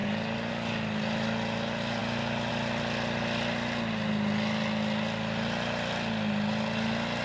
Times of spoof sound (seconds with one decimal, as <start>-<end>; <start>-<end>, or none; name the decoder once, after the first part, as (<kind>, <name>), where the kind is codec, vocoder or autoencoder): none